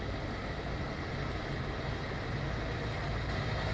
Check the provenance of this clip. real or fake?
real